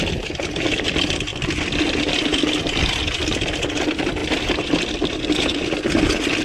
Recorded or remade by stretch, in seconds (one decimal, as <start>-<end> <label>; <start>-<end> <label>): 0.0-6.4 recorded